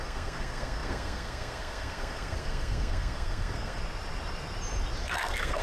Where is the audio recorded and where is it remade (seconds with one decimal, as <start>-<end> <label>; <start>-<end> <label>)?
0.0-3.8 remade; 3.8-5.0 recorded; 5.0-5.6 remade